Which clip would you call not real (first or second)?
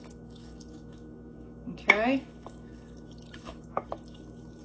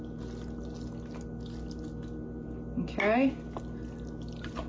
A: first